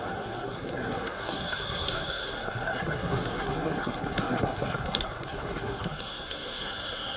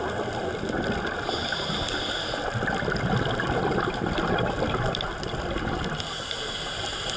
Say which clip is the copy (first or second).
first